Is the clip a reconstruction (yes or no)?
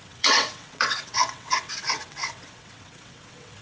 yes